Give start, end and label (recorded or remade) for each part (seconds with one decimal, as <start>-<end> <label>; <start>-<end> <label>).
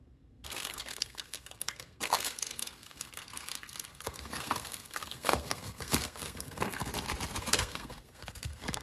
0.0-6.9 remade; 6.9-7.4 recorded; 7.4-8.8 remade